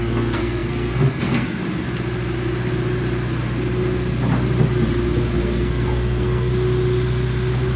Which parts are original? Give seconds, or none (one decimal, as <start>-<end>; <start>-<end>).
1.6-5.4; 6.5-7.8